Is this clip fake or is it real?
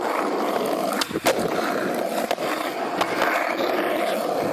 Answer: real